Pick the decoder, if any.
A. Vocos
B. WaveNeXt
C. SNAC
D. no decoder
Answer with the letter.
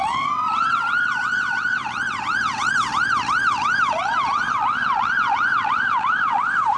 B